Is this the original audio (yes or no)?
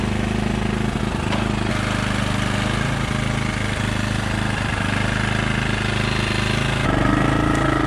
yes